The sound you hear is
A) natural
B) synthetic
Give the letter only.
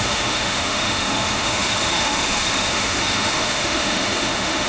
B